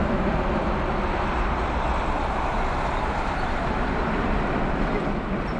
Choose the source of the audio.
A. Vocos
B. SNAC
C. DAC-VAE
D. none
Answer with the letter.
D